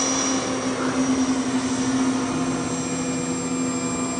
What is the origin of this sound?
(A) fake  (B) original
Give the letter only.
B